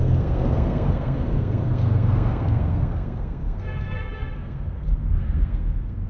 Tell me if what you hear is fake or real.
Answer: fake